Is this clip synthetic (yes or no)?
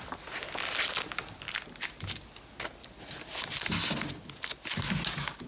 no